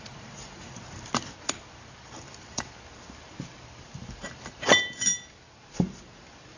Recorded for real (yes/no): no